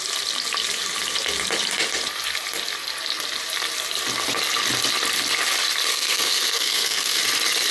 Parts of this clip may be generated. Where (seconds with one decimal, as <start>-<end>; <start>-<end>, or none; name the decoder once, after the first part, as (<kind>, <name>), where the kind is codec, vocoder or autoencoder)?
5.9-7.2 (codec, SNAC)